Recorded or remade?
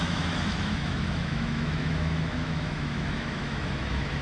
remade